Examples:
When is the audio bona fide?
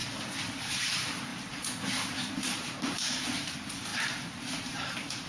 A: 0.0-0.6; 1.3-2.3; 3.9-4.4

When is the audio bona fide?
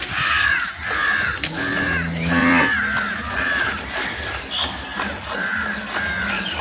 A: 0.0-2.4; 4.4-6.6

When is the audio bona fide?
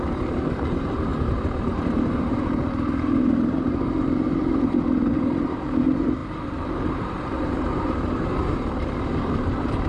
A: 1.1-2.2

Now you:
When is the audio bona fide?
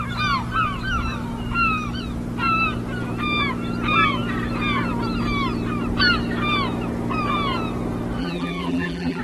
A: 0.0-8.2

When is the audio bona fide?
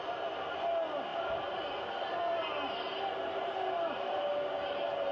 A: 0.0-1.1; 4.2-5.1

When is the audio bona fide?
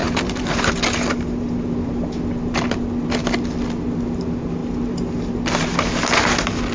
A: 0.7-6.7